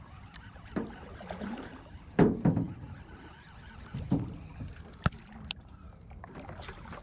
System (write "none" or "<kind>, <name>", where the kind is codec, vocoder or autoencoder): none